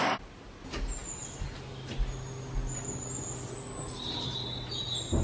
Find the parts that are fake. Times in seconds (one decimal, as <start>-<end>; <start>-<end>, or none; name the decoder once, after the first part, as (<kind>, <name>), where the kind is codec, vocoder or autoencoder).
none